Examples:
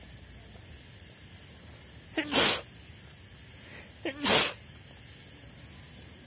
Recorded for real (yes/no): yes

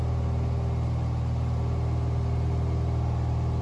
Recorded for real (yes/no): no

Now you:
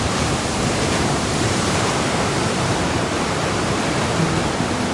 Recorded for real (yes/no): no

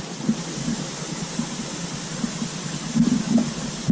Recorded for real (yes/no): yes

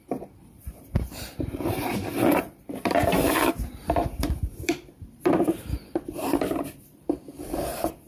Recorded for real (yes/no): no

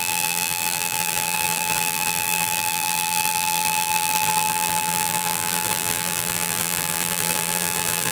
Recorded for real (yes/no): no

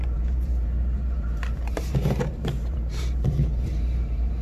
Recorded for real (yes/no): no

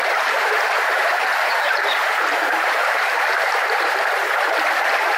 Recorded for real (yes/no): no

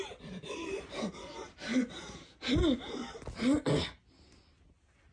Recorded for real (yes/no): yes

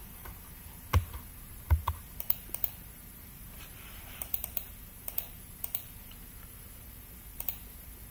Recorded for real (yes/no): no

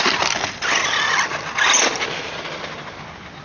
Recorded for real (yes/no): yes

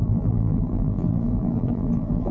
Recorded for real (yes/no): no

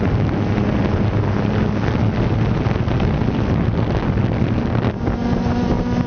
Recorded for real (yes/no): yes